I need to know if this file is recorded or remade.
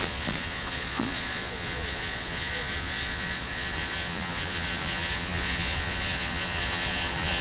remade